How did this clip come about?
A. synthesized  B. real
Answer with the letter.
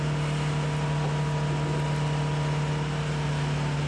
B